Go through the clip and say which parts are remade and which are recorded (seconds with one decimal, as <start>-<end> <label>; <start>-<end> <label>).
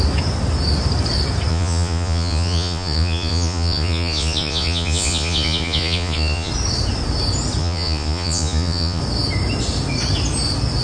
0.0-1.5 recorded; 1.5-6.5 remade; 6.5-7.6 recorded; 7.6-9.0 remade; 9.0-10.8 recorded